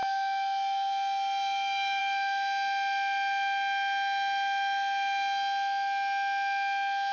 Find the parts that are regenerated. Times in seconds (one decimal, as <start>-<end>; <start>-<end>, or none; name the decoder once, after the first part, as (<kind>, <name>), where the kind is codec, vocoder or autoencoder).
none